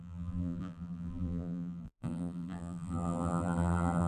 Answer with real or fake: fake